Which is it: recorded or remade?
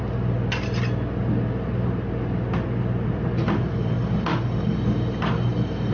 recorded